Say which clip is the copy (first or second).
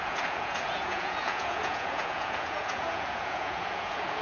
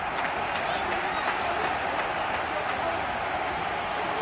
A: first